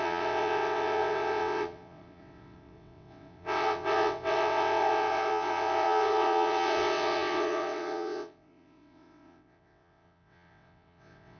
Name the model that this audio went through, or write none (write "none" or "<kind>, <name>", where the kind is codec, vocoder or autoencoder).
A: vocoder, WaveNeXt